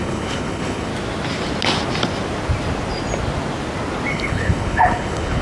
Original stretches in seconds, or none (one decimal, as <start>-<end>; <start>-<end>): 0.9-4.1